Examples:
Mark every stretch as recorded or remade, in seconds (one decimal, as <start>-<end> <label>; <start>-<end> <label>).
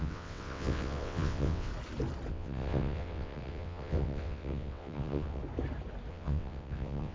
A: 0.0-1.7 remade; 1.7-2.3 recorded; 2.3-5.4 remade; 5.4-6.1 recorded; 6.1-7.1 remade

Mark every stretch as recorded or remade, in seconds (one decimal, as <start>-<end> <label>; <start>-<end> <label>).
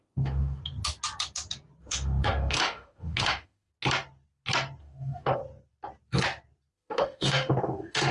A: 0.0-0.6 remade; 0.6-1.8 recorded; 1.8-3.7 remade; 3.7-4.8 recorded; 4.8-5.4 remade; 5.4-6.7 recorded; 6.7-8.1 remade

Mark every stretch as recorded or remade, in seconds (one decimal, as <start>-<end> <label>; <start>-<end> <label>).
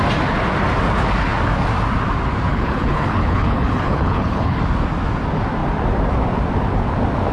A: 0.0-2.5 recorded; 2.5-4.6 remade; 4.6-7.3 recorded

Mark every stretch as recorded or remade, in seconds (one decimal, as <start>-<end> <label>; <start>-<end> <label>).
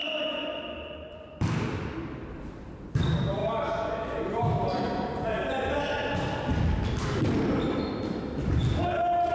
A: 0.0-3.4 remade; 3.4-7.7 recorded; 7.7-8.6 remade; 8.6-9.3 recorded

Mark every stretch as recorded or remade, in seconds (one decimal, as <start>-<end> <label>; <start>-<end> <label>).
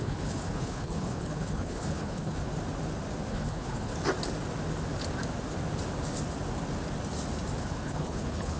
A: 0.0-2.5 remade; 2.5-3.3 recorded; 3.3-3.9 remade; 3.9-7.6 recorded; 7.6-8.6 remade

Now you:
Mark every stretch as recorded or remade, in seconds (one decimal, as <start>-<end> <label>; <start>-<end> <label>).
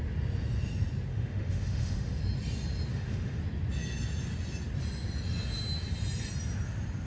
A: 0.0-1.1 recorded; 1.1-2.2 remade; 2.2-2.9 recorded; 2.9-3.4 remade; 3.4-7.1 recorded